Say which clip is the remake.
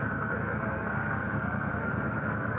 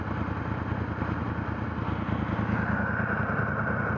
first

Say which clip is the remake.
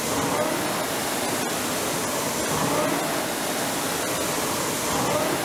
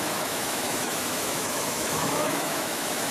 second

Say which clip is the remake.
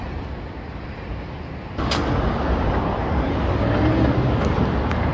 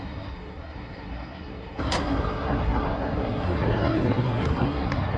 second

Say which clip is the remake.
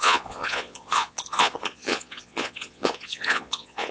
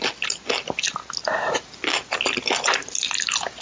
first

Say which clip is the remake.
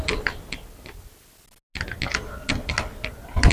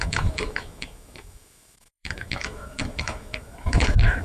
second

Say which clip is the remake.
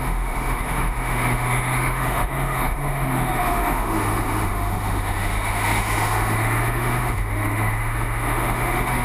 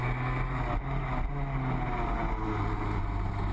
first